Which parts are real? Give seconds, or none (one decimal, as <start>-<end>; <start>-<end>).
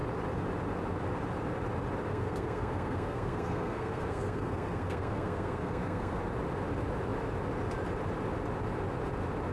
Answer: 0.0-2.1; 6.2-9.5